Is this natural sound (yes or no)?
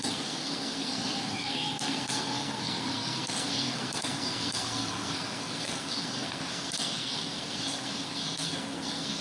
no